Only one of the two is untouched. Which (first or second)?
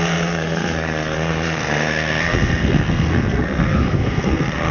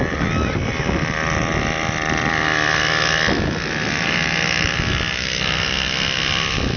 second